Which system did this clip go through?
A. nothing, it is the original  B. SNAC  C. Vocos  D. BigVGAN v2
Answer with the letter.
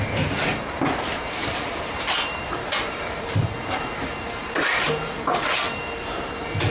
D